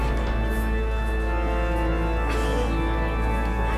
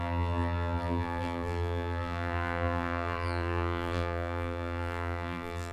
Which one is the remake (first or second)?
second